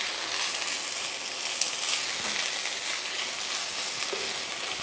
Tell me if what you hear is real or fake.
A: real